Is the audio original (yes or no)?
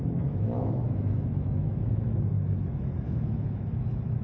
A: no